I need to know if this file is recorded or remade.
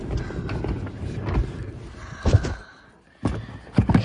recorded